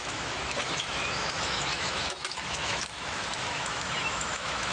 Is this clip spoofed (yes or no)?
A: yes